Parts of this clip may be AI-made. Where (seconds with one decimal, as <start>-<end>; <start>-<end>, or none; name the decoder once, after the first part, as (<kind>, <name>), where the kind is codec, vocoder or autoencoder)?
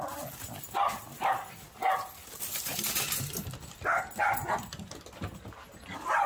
none